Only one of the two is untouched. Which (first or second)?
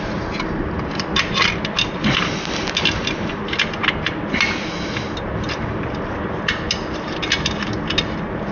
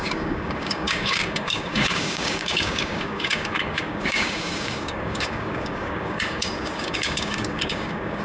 first